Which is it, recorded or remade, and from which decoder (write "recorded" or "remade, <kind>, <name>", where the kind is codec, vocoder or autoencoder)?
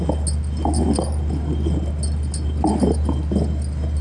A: recorded